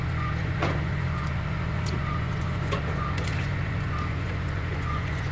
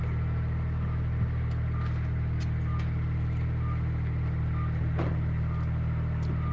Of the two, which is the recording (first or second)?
second